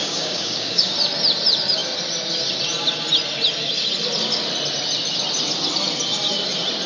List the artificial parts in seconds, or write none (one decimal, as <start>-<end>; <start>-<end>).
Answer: 0.0-0.9